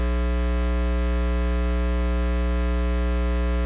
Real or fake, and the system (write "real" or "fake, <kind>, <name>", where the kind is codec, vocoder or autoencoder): real